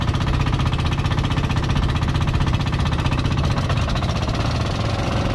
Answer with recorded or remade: recorded